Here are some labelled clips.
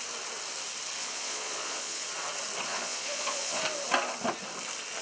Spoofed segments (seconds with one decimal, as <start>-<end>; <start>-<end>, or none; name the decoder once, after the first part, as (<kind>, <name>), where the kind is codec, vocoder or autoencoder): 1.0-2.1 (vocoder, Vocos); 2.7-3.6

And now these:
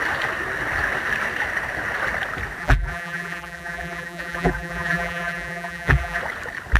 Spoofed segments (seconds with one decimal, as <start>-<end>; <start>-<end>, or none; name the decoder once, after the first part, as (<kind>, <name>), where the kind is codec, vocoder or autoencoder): 2.6-6.2 (vocoder, BigVGAN v2)

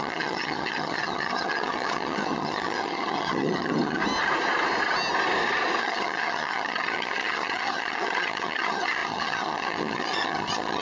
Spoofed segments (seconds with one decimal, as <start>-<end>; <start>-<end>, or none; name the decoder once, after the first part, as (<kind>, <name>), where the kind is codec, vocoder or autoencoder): 0.0-4.0 (vocoder, HiFi-GAN); 5.8-10.8

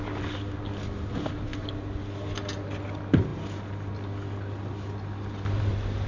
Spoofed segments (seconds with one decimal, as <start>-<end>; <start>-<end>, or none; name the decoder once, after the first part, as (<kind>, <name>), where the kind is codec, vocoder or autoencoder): none

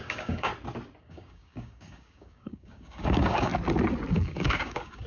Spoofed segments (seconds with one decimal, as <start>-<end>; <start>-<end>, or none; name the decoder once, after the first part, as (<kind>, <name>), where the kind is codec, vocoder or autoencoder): 0.0-0.5 (codec, DAC); 1.0-3.5; 4.1-5.1

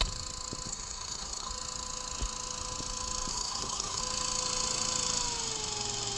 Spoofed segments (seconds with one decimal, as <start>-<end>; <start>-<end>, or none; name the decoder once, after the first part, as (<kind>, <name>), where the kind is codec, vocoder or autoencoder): 0.7-1.5 (codec, SNAC); 3.3-4.0

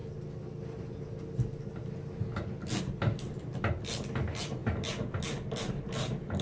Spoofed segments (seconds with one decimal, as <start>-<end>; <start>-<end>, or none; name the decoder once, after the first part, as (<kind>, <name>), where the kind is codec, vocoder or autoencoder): none

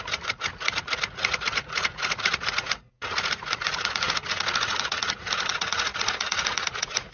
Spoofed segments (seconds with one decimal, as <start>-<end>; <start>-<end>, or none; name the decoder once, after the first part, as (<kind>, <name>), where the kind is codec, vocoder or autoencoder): 0.0-7.1 (vocoder, Vocos)